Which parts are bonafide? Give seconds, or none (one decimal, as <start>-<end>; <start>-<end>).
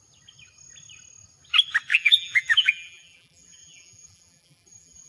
0.0-1.9